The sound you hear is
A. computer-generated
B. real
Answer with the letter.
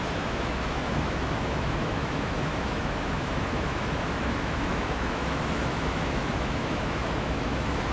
A